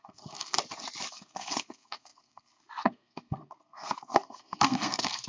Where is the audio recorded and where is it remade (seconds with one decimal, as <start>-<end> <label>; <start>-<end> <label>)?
0.0-0.6 remade; 0.6-1.1 recorded; 1.1-5.3 remade